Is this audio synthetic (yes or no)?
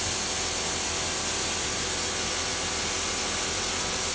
no